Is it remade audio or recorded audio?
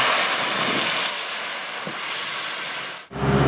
recorded